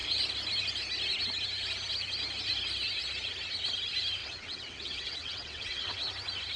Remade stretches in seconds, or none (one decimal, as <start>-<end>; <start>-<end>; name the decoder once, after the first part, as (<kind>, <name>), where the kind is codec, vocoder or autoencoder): 4.2-6.0 (vocoder, WaveNeXt)